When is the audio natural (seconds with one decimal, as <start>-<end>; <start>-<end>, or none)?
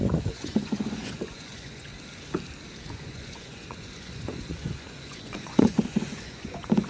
1.9-2.9